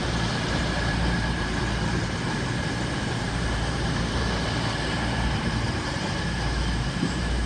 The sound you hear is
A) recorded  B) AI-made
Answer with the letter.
B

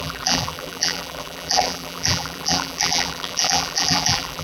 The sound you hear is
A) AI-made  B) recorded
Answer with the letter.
A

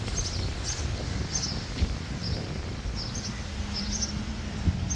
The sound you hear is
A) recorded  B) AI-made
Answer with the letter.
A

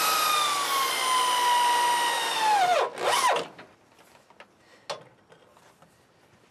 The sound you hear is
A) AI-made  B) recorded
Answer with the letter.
B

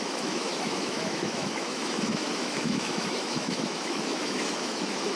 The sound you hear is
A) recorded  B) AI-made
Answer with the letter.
B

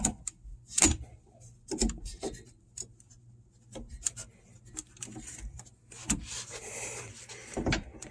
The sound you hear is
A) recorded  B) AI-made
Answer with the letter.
B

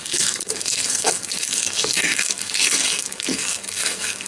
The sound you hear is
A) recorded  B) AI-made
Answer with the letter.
B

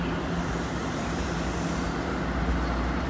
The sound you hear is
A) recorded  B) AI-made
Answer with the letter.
A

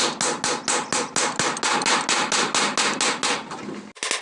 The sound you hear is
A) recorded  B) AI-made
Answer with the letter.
A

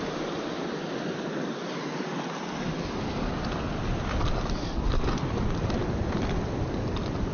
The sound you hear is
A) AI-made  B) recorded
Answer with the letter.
B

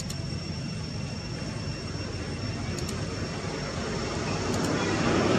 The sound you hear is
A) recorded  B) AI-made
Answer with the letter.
A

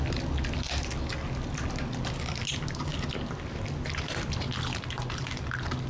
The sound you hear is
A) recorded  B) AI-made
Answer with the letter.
A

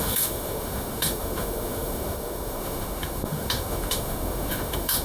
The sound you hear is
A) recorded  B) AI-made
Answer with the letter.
B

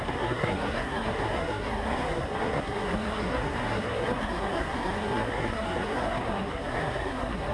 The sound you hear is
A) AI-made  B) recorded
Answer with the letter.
A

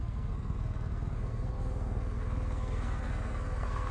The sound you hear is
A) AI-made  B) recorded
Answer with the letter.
A